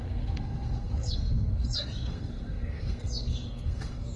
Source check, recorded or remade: remade